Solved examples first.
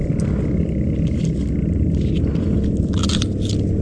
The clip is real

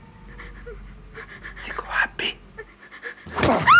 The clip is real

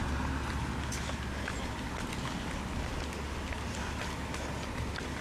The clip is real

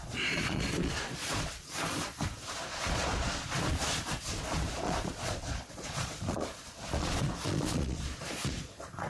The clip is fake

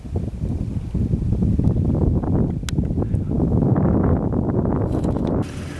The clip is real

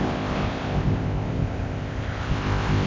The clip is fake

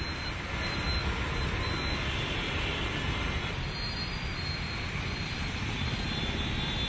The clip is real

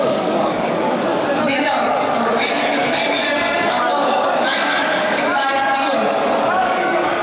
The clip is fake